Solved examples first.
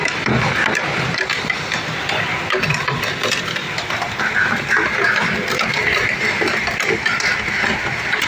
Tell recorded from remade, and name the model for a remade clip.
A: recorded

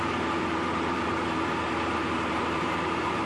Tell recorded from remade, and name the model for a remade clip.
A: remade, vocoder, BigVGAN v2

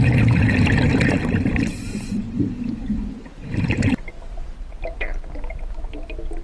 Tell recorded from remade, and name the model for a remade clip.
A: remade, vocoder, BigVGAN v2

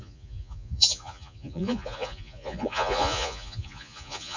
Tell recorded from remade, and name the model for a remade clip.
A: remade, vocoder, Vocos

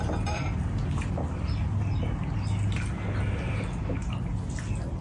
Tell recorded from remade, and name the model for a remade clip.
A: recorded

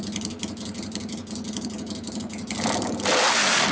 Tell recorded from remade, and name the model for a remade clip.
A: recorded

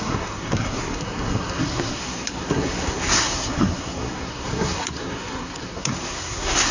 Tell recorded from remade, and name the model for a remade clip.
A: remade, codec, SNAC